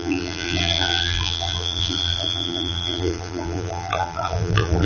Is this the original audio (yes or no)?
no